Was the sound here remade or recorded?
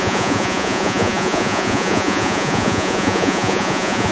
remade